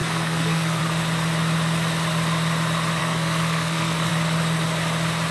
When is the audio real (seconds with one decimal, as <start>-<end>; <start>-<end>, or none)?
0.8-3.0; 4.1-5.3